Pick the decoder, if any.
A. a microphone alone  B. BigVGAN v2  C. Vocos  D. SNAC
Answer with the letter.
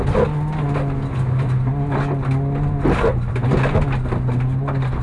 A